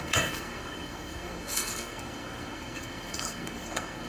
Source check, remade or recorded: remade